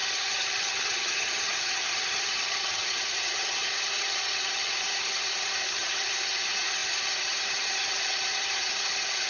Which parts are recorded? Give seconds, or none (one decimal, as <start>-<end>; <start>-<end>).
none